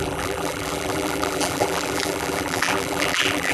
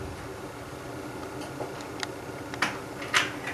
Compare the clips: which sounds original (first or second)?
second